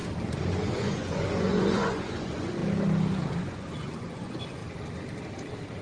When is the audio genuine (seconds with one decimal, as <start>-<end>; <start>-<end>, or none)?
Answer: 0.0-0.5; 2.6-3.4; 4.6-5.8